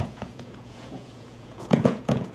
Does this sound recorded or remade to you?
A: remade